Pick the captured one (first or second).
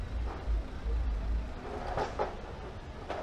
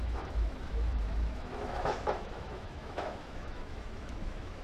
first